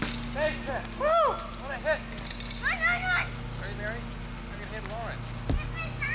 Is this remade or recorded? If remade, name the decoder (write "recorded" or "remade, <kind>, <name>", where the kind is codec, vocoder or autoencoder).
recorded